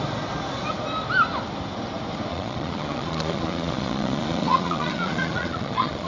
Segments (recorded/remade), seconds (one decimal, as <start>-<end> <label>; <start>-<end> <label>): 0.0-2.3 recorded; 2.3-6.1 remade